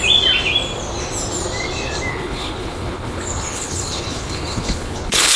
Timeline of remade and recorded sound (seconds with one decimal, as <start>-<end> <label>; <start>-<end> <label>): 0.0-2.1 recorded; 2.1-5.4 remade